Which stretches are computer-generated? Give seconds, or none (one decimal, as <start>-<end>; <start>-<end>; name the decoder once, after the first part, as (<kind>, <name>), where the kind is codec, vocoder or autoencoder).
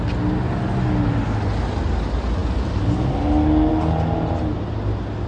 none